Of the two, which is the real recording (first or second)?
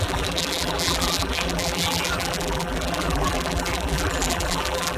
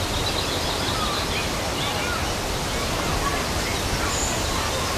second